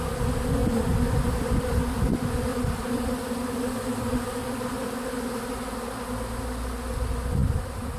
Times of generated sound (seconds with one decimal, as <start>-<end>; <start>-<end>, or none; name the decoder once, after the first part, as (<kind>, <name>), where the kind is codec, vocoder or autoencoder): 0.6-1.8 (vocoder, BigVGAN v2); 2.5-5.3; 7.4-8.0